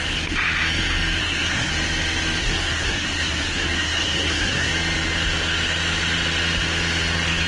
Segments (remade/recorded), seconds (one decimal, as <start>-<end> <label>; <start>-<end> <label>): 0.0-1.2 recorded; 1.2-1.7 remade; 1.7-2.4 recorded; 2.4-4.7 remade; 4.7-7.5 recorded